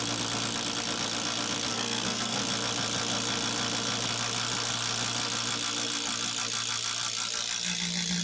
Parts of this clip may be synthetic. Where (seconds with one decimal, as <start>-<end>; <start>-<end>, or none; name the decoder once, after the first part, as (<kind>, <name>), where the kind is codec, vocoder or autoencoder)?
1.7-2.4 (codec, SNAC)

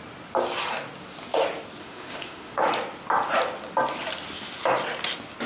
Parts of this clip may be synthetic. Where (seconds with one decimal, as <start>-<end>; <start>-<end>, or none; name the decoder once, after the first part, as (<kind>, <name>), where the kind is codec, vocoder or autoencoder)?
1.8-2.7 (autoencoder, DAC-VAE)

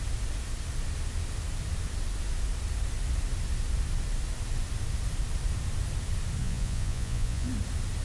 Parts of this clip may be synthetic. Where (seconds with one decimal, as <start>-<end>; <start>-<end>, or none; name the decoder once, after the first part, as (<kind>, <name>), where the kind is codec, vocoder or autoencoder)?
6.4-7.5 (vocoder, Vocos)

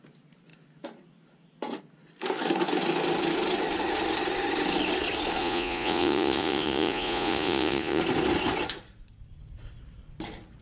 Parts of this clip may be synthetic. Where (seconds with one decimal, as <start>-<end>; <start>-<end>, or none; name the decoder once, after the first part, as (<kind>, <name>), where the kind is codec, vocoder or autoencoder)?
5.4-8.0 (vocoder, Vocos)

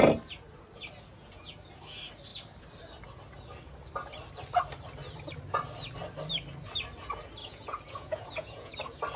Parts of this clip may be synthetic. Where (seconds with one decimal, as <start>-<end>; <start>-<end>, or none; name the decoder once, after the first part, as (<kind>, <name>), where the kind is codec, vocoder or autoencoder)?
1.1-1.7 (vocoder, Vocos); 7.4-8.7

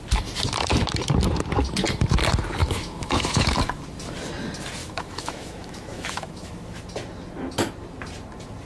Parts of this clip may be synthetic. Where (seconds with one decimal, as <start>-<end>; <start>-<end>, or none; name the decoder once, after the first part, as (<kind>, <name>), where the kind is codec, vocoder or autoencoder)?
2.6-3.5 (autoencoder, DAC-VAE); 4.8-6.5

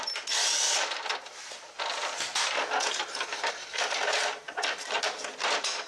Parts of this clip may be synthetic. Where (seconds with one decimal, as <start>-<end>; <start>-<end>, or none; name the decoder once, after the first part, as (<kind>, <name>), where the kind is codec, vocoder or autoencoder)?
0.0-0.4 (vocoder, BigVGAN v2); 1.8-2.3; 3.5-5.9

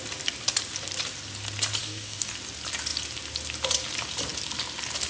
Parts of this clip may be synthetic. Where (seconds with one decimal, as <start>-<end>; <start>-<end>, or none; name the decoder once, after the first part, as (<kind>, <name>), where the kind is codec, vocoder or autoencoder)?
1.8-2.3 (codec, DAC)